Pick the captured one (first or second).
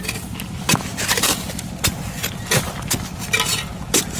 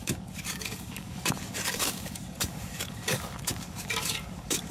first